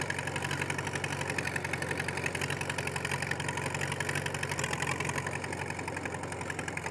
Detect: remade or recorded recorded